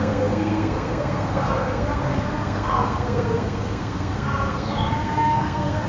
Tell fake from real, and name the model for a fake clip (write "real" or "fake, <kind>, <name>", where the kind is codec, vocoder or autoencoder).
fake, codec, SNAC